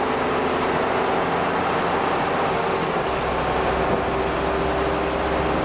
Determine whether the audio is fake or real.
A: real